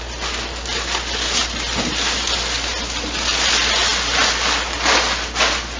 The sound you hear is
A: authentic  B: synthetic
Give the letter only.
A